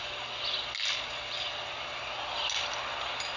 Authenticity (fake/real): real